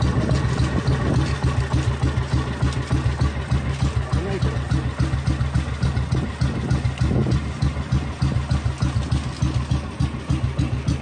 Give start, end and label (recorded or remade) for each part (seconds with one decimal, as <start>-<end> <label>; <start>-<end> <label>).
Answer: 0.0-11.0 recorded